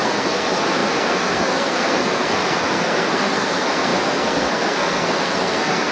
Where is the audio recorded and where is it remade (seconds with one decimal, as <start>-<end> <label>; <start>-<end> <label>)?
0.0-5.9 remade